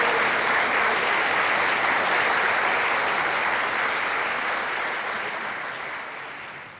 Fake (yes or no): no